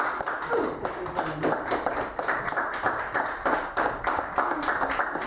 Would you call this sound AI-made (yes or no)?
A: no